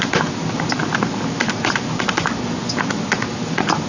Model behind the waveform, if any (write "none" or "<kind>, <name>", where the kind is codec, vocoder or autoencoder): vocoder, BigVGAN v2